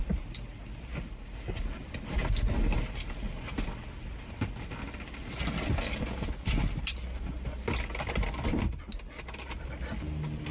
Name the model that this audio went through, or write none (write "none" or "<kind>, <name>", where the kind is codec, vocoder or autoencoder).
none